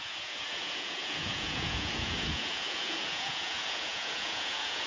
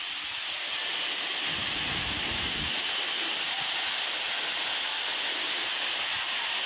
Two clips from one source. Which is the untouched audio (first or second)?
second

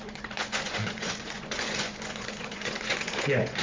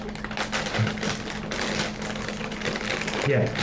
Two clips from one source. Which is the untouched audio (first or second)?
second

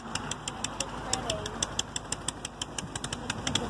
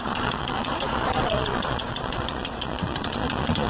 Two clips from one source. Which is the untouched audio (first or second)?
first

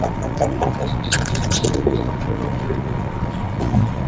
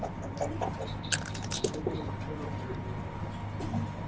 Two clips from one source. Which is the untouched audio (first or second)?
second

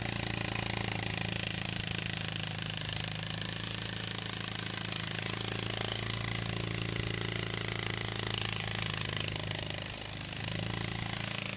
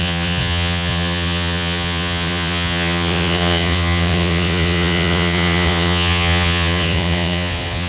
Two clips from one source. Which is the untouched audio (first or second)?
first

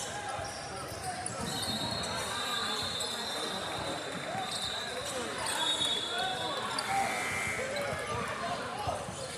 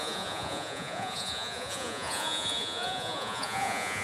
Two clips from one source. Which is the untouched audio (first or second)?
first